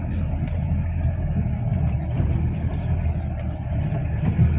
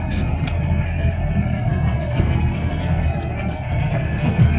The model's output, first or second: second